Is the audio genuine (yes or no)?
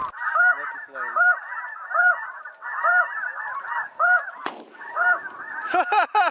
yes